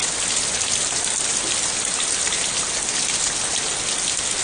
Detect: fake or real real